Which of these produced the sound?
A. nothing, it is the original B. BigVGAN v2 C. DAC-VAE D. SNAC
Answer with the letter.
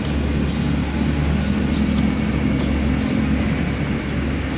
A